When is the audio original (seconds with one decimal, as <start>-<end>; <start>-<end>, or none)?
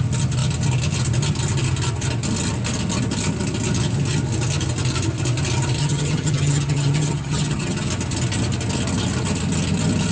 0.0-5.8; 7.9-10.1